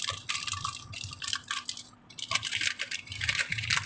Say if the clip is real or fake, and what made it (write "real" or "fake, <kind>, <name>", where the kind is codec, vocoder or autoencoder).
real